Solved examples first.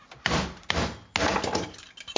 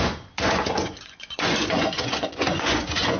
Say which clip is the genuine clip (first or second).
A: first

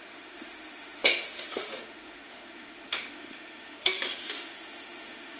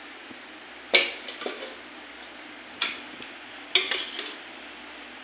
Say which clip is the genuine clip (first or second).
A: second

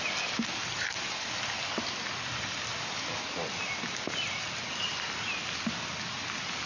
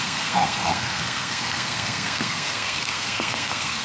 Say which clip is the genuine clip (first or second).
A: first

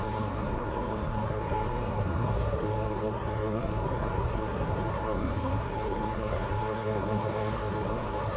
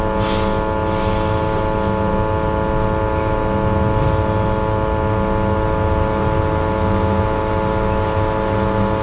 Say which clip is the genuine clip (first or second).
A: second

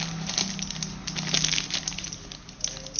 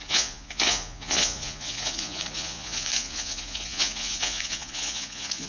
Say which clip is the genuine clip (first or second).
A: first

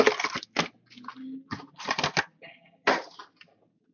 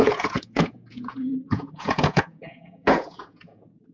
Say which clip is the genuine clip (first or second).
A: first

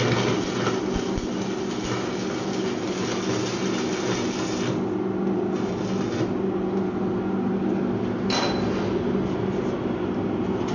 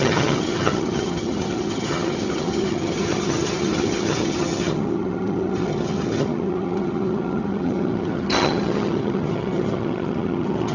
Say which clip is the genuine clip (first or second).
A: first